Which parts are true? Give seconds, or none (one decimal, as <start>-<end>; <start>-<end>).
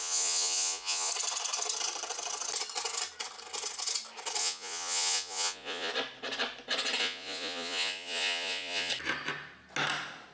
1.1-4.4; 5.9-7.0; 8.9-10.3